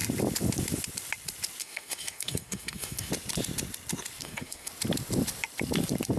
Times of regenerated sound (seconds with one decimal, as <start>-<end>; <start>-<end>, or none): 1.6-3.1; 4.2-4.7